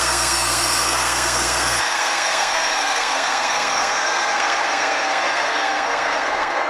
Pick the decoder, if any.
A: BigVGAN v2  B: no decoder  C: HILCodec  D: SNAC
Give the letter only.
D